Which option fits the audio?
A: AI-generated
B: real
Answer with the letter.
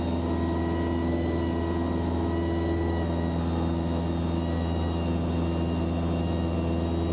B